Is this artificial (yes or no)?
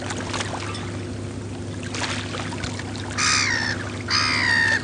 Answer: no